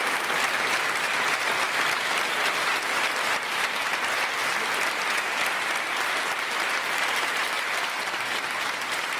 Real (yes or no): yes